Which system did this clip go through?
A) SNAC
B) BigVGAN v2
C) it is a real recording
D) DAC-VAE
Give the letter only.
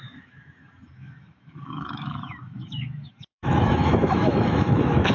D